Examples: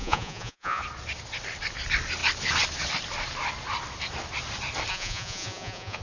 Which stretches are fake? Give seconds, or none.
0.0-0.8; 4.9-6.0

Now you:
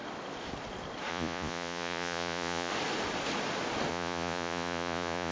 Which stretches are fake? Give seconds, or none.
1.1-2.7; 3.9-5.3